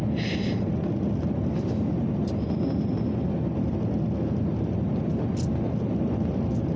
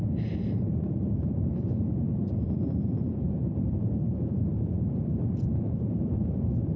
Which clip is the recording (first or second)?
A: first